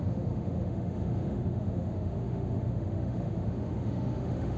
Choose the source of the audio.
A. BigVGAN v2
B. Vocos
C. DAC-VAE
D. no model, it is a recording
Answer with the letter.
C